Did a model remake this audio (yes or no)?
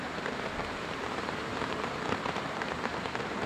yes